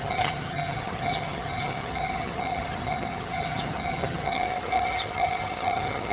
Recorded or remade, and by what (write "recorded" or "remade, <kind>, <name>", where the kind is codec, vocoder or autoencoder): remade, vocoder, HiFi-GAN